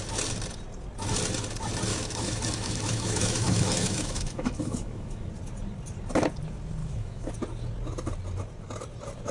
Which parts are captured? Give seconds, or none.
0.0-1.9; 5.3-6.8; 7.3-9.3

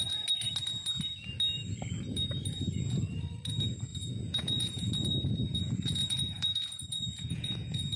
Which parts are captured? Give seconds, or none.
0.0-3.9

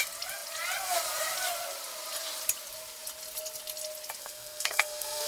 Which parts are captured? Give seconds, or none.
0.0-4.2

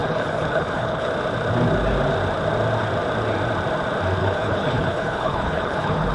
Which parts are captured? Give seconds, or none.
1.1-4.2

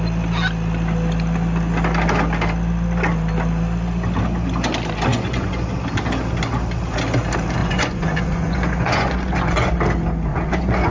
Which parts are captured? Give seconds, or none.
0.0-5.1; 5.8-7.6; 9.7-10.3